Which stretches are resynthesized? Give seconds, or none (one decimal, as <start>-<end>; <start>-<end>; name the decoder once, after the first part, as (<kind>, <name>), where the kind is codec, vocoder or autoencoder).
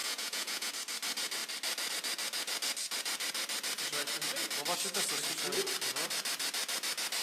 0.0-0.7 (vocoder, Vocos)